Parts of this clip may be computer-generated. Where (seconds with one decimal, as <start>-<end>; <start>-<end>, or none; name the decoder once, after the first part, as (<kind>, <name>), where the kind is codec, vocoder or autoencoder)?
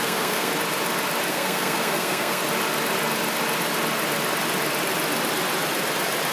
0.0-0.5 (codec, SNAC); 1.3-2.4